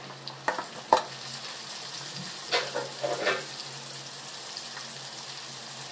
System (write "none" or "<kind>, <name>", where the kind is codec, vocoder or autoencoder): none